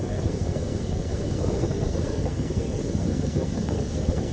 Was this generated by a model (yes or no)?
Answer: yes